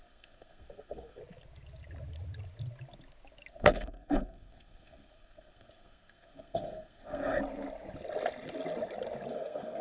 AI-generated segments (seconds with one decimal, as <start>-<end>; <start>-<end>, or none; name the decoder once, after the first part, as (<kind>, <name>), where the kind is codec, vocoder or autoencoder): 0.0-1.2 (codec, SNAC); 3.5-7.4; 9.3-9.8